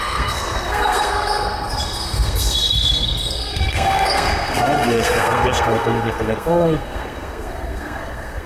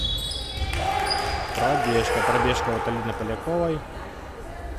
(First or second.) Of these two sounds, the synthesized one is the first